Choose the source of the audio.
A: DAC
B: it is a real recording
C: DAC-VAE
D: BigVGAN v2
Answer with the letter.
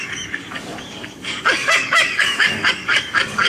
A